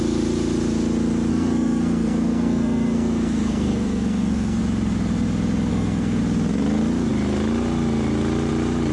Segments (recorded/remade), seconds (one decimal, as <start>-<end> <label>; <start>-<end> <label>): 0.0-1.3 recorded; 1.3-4.6 remade; 4.6-5.7 recorded; 5.7-6.2 remade; 6.2-8.9 recorded